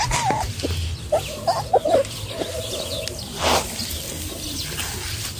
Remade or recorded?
recorded